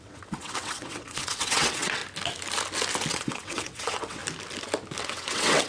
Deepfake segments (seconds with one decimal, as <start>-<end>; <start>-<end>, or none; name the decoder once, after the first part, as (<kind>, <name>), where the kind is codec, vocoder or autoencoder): 0.0-2.0 (vocoder, WaveNeXt); 3.1-4.2; 5.0-5.7